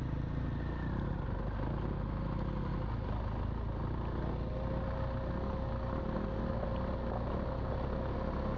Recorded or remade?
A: recorded